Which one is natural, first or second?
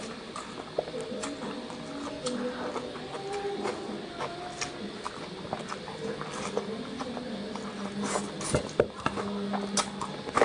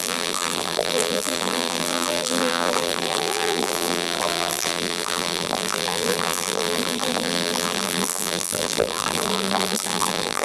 first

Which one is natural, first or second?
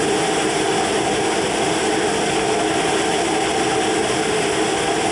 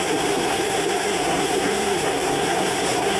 first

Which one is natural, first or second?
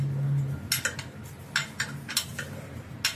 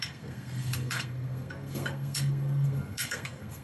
first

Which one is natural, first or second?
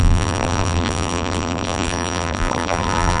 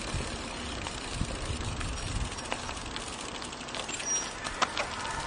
second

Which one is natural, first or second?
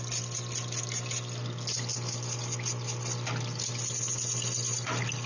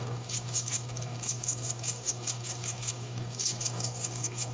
first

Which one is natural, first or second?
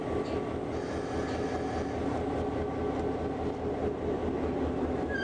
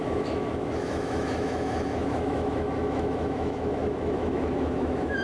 first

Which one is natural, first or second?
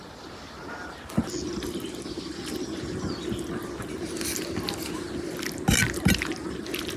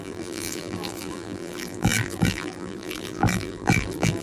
first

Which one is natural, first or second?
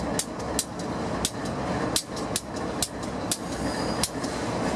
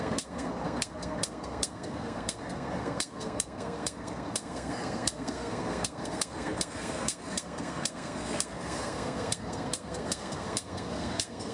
first